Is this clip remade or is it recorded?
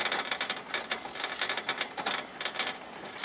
recorded